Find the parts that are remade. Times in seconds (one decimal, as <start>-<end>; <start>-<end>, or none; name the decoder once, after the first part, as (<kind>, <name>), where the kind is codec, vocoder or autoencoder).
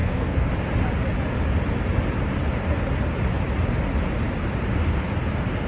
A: 0.0-0.5 (codec, SNAC)